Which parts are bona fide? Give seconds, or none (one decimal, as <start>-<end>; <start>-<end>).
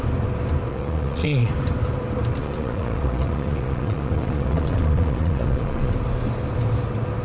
0.0-0.7; 1.5-2.4; 5.9-7.2